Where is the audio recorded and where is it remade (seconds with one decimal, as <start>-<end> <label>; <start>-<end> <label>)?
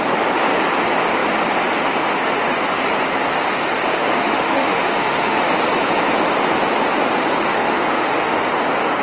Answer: 0.0-4.0 recorded; 4.0-5.5 remade; 5.5-7.5 recorded; 7.5-8.5 remade; 8.5-9.0 recorded